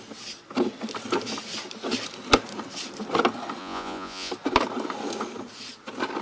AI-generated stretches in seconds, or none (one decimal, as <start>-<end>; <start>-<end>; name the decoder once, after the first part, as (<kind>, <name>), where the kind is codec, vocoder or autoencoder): 3.6-4.3 (vocoder, Vocos)